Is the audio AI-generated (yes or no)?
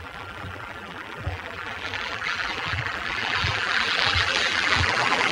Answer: yes